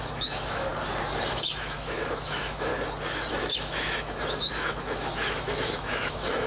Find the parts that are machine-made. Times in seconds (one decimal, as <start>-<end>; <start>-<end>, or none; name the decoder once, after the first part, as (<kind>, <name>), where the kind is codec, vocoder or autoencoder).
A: 0.0-0.7 (autoencoder, DAC-VAE); 1.3-2.7; 3.3-6.5